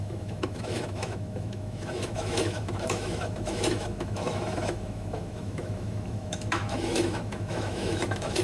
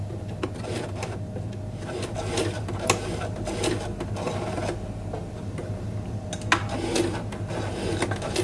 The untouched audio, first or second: second